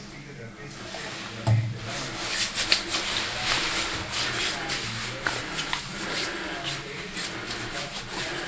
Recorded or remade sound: recorded